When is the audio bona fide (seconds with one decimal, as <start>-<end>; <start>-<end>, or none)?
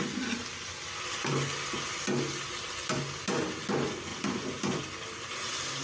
0.0-4.1; 4.8-5.8